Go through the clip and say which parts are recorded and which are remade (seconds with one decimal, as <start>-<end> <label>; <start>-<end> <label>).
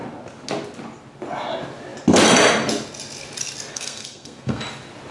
0.0-3.7 recorded; 3.7-4.6 remade; 4.6-5.1 recorded